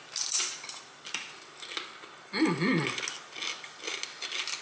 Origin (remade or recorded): recorded